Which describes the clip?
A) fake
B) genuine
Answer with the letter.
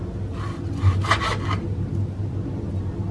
B